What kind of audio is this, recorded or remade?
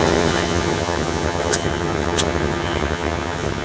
remade